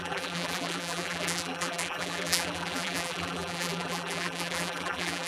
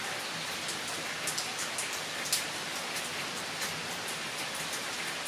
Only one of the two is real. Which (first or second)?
second